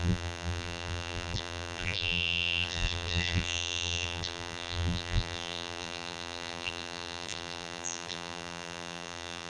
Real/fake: fake